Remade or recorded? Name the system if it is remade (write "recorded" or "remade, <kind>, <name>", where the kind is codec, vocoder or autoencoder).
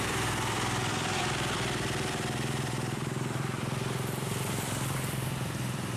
remade, vocoder, BigVGAN v2